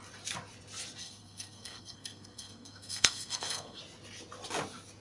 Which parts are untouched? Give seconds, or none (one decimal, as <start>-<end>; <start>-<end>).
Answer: 0.0-1.0; 3.8-5.0